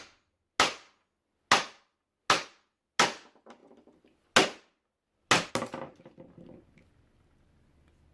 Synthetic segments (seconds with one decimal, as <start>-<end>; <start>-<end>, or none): none